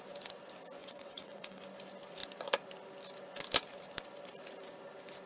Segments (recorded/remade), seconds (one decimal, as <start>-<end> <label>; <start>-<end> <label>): 0.0-0.8 recorded; 0.8-1.6 remade; 1.6-5.3 recorded

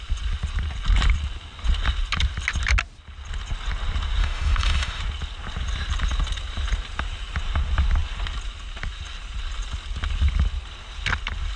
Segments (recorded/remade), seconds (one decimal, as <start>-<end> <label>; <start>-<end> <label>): 0.0-4.2 recorded; 4.2-5.0 remade; 5.0-11.6 recorded

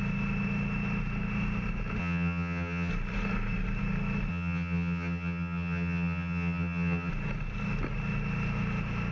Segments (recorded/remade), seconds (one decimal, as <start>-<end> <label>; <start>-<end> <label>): 0.0-2.0 recorded; 2.0-2.9 remade; 2.9-4.3 recorded; 4.3-7.1 remade; 7.1-9.1 recorded

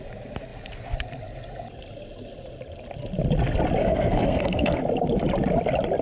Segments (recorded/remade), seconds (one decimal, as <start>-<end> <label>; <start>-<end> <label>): 0.0-3.8 recorded; 3.8-4.8 remade; 4.8-6.0 recorded

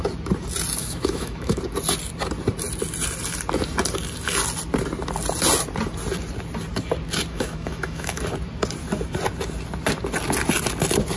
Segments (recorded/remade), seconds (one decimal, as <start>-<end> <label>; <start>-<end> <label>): 0.0-0.8 recorded; 0.8-1.6 remade; 1.6-7.3 recorded; 7.3-8.2 remade; 8.2-11.2 recorded

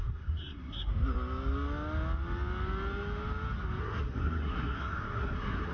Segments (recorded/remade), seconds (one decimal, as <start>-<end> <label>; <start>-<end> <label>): 0.0-0.9 remade; 0.9-3.8 recorded; 3.8-5.7 remade

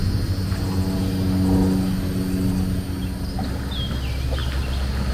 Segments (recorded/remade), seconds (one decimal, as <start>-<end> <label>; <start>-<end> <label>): 0.0-5.1 recorded

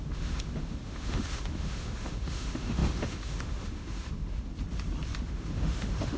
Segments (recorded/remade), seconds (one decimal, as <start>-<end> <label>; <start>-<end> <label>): 0.0-4.5 remade; 4.5-5.2 recorded; 5.2-6.2 remade